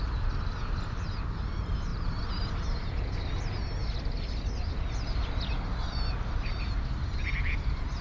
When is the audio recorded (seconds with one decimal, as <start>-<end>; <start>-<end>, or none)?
0.0-8.0